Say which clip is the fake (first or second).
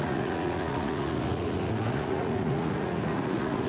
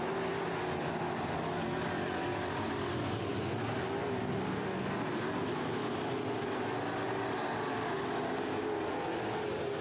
first